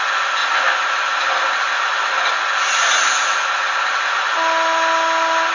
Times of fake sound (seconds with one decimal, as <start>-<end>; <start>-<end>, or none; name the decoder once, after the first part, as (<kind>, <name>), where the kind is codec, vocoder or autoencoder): none